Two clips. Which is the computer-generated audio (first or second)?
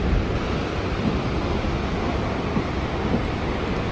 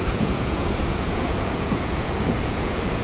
second